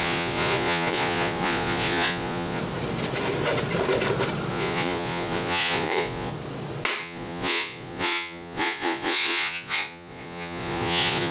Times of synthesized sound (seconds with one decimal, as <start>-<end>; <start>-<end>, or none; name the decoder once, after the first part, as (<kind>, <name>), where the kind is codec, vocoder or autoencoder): 0.0-2.6 (vocoder, Vocos); 4.5-6.3; 7.0-11.3